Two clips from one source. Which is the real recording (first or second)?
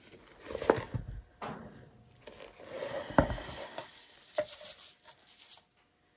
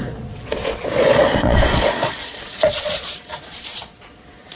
first